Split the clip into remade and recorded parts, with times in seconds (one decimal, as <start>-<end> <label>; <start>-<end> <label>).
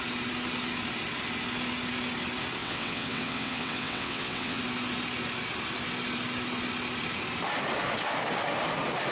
0.0-2.6 recorded; 2.6-4.6 remade; 4.6-9.1 recorded